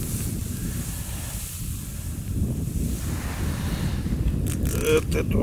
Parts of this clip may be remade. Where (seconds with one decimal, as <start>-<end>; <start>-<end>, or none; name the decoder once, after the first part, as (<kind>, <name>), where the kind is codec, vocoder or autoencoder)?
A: 0.4-2.9 (vocoder, BigVGAN v2)